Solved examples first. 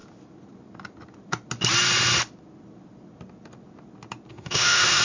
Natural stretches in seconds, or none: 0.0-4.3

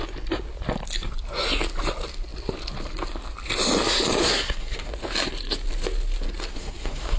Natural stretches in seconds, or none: 0.0-4.2; 4.9-6.5